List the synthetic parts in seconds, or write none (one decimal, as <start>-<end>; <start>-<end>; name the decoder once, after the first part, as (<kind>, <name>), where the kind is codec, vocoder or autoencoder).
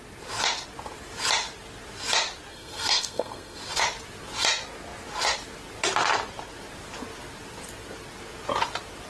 2.5-3.6 (codec, SNAC)